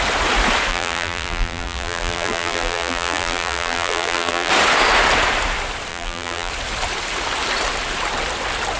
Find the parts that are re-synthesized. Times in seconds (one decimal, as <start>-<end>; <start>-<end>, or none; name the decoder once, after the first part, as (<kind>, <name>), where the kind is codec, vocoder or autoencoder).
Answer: 0.7-4.5 (vocoder, BigVGAN v2); 5.9-6.5